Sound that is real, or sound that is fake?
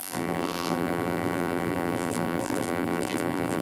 fake